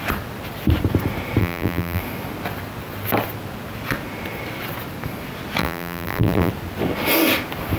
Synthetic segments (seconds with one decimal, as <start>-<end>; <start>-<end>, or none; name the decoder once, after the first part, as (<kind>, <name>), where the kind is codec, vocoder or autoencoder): 1.4-2.0 (vocoder, BigVGAN v2); 5.6-6.5